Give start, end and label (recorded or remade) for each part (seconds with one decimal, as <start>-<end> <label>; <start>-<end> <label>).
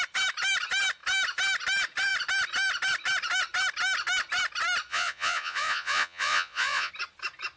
0.0-4.9 recorded; 4.9-6.9 remade; 6.9-7.6 recorded